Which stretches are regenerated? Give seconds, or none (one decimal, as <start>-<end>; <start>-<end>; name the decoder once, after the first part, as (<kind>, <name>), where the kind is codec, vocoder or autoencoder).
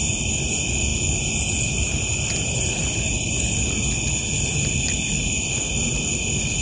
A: none